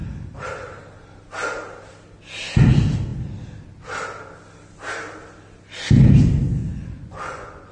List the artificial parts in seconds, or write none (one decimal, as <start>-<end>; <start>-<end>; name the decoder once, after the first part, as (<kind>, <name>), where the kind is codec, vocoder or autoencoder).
6.6-7.7 (vocoder, Vocos)